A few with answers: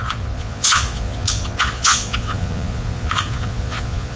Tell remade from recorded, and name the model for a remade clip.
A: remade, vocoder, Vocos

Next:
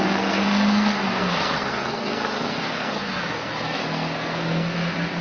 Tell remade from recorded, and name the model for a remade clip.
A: remade, codec, SNAC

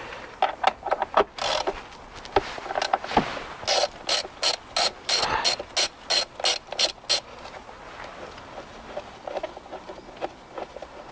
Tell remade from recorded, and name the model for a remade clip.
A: recorded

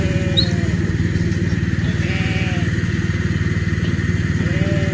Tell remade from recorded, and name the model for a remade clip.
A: recorded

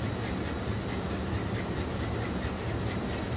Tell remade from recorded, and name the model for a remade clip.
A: recorded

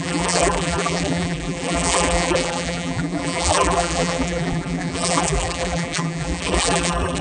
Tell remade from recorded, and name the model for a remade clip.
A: remade, vocoder, BigVGAN v2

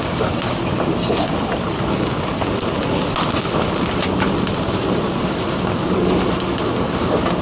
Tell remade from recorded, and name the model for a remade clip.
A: recorded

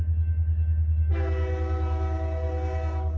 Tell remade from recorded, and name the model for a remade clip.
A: recorded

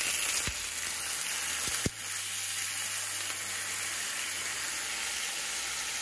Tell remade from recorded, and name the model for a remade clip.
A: recorded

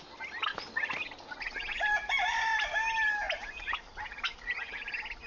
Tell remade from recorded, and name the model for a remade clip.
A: recorded